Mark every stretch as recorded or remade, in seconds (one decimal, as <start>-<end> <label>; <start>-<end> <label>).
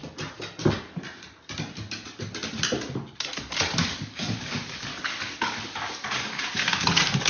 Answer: 0.0-3.9 recorded; 3.9-4.9 remade; 4.9-5.4 recorded; 5.4-7.3 remade